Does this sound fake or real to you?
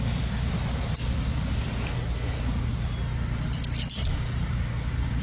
real